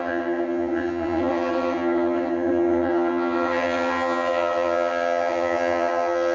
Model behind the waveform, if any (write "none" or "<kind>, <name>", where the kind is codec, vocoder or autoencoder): vocoder, HiFi-GAN